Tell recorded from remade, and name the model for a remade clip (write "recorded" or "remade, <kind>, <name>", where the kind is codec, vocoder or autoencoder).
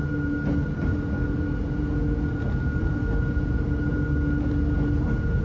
recorded